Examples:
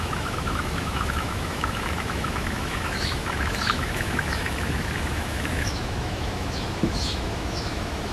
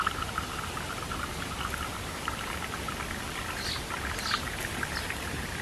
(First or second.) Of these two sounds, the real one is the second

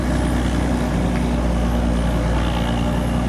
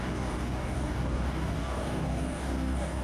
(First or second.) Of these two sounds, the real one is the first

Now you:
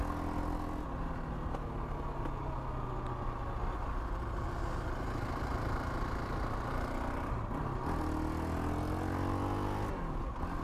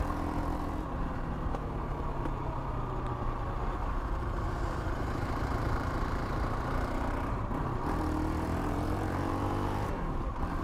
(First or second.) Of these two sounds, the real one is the first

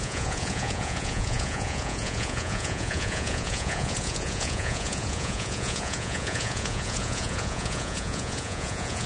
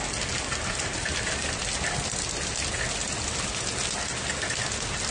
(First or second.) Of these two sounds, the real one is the second